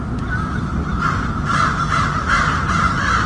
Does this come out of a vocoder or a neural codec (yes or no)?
no